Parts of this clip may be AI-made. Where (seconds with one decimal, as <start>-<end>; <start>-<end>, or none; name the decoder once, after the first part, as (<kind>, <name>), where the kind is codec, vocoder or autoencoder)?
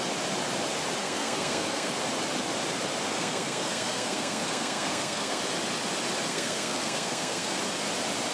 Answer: 1.0-1.9 (codec, SNAC); 3.1-5.4; 6.3-7.6